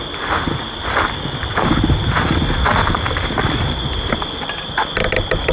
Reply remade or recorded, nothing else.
recorded